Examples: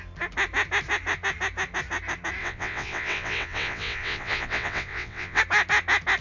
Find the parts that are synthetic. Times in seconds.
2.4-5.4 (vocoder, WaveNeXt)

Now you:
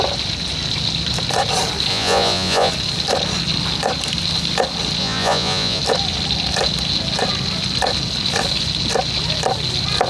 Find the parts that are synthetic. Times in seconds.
1.9-2.7 (vocoder, Vocos); 5.0-5.8

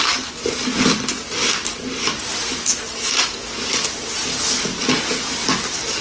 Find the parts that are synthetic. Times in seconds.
none